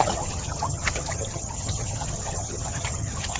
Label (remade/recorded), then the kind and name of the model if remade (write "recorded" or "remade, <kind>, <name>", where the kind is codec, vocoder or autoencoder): remade, vocoder, HiFi-GAN